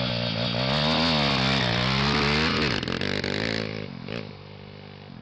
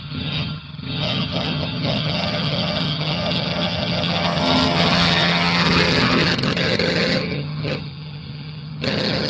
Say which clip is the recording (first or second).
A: first